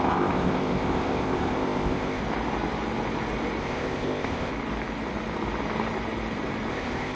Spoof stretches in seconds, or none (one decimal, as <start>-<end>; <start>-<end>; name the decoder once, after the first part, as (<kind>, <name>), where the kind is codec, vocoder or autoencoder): 0.0-2.2 (codec, ZipCodec); 3.6-4.5; 6.7-7.2